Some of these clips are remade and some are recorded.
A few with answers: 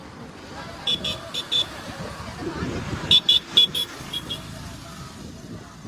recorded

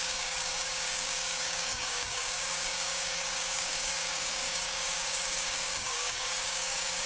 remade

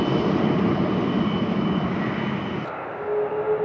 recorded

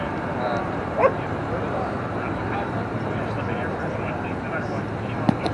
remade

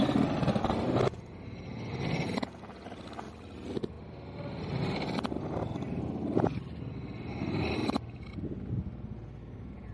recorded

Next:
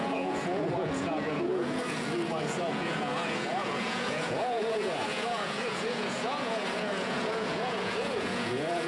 remade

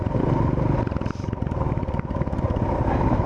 recorded